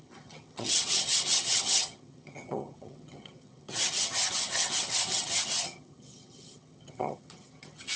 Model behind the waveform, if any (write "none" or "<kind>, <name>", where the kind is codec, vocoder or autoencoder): vocoder, HiFi-GAN